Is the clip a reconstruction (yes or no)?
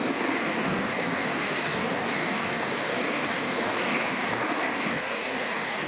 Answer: yes